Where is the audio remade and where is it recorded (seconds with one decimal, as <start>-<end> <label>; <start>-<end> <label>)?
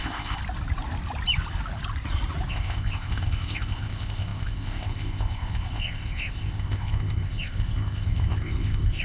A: 0.0-0.4 remade; 0.4-2.5 recorded; 2.5-9.0 remade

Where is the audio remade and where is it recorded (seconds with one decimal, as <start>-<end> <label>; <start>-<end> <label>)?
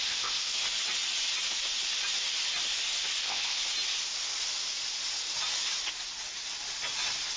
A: 0.0-0.5 remade; 0.5-3.2 recorded; 3.2-3.6 remade; 3.6-7.4 recorded